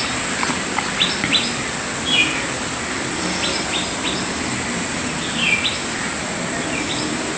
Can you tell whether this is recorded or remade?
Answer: recorded